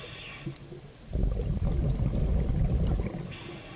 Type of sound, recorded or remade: recorded